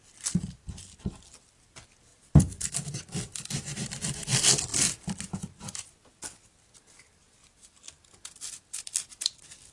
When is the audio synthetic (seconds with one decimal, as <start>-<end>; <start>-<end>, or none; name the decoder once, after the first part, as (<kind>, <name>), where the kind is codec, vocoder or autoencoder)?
none